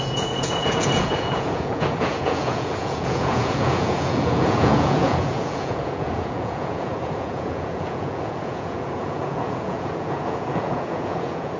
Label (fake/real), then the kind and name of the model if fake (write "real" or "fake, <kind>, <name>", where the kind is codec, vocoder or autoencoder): fake, vocoder, Vocos